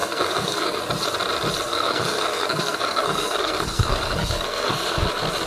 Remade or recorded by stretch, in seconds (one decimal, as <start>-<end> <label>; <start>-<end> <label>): 0.0-0.8 remade; 0.8-1.7 recorded; 1.7-5.0 remade; 5.0-5.5 recorded